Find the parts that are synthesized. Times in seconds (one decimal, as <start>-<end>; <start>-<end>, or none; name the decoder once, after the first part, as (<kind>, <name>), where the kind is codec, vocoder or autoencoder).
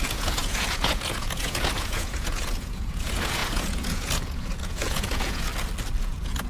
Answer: 0.0-5.5 (vocoder, Vocos); 6.0-6.5